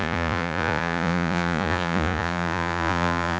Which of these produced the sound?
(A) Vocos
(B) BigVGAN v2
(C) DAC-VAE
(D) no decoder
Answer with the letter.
A